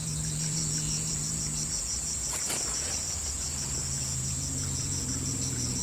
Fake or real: fake